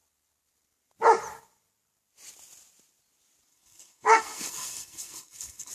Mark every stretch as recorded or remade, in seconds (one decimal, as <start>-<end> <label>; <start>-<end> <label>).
0.0-3.5 recorded; 3.5-5.7 remade